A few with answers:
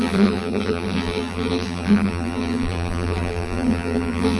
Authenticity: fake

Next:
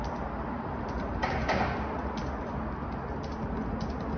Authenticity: real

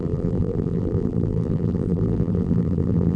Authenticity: fake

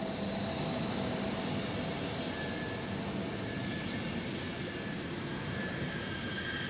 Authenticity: real